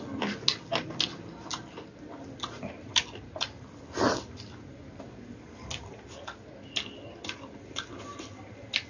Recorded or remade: recorded